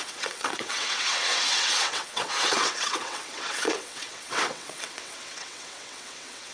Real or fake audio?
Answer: fake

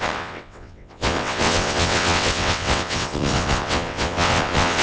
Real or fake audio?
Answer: fake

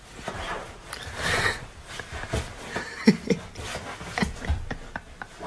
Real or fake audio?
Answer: real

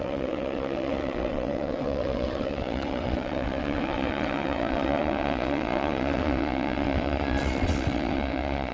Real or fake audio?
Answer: fake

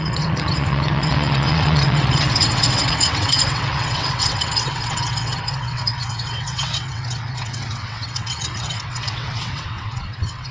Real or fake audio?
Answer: fake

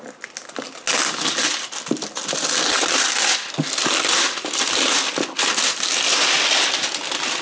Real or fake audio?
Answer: real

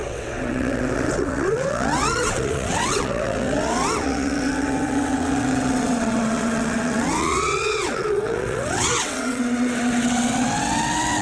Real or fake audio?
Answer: fake